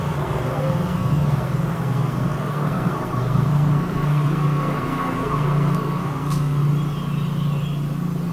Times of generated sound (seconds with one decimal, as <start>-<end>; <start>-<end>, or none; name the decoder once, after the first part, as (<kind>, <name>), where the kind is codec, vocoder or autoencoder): 0.0-6.6 (codec, SNAC)